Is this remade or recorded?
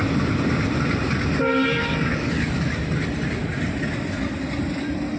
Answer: recorded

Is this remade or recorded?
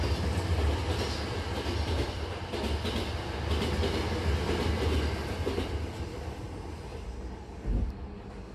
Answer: recorded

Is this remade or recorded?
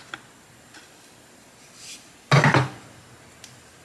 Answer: recorded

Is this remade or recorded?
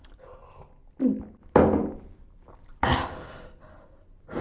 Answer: recorded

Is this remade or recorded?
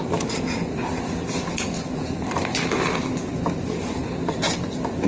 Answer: recorded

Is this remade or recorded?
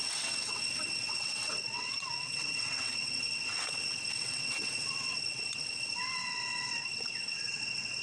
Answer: remade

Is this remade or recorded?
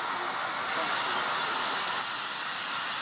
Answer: recorded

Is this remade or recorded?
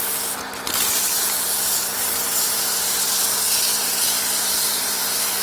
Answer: recorded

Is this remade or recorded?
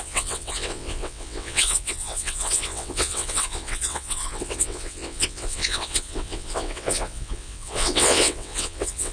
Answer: remade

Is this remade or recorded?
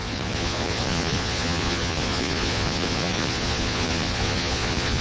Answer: remade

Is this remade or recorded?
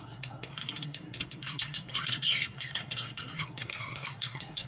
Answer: remade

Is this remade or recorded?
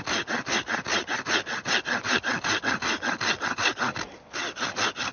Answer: recorded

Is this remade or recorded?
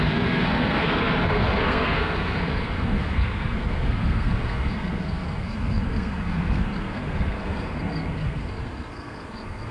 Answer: remade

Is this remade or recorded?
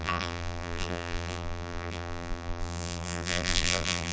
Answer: remade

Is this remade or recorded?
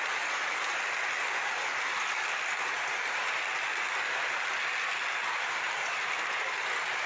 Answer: recorded